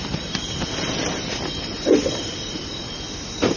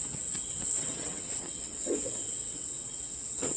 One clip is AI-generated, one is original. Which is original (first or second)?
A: first